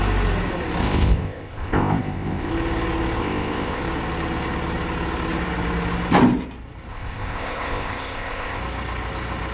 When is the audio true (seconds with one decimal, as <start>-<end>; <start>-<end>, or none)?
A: 0.0-0.8; 2.5-3.2; 3.8-6.9; 8.6-9.5